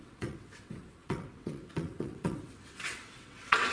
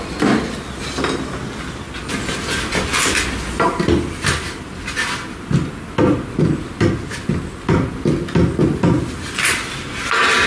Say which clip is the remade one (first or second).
first